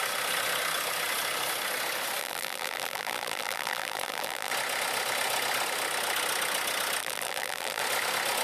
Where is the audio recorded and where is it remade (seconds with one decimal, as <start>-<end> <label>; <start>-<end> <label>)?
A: 0.0-2.2 recorded; 2.2-4.5 remade; 4.5-7.0 recorded; 7.0-7.8 remade; 7.8-8.4 recorded